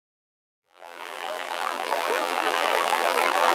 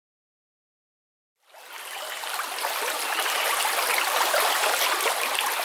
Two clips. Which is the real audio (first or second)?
second